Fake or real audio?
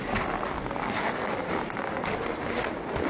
real